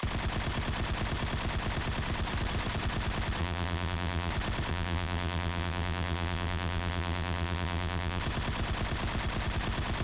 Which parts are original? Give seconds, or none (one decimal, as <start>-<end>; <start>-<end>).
0.0-3.4; 4.3-4.7; 8.2-10.0